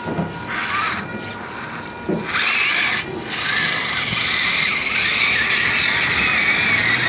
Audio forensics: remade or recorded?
recorded